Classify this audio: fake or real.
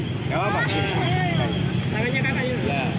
real